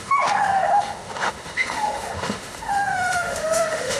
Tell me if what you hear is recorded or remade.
remade